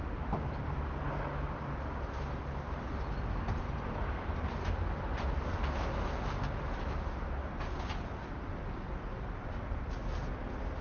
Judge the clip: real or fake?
real